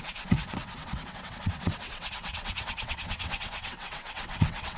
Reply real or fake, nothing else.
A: fake